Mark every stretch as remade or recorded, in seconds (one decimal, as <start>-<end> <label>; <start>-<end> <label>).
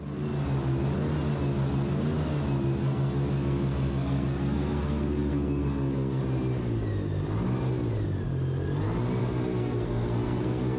0.0-2.8 recorded; 2.8-6.2 remade; 6.2-9.2 recorded; 9.2-10.8 remade